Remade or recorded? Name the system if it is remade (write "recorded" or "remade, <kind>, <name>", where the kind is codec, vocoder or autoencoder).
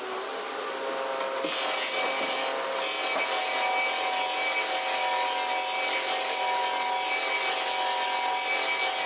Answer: recorded